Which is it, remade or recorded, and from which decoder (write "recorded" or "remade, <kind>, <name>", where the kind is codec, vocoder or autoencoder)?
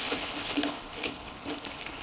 remade, codec, HILCodec